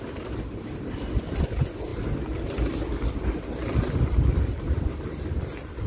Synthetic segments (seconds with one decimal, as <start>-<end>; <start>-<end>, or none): none